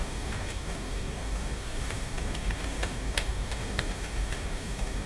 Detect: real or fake fake